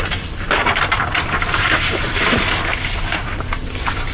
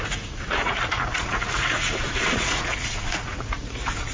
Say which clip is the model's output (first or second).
second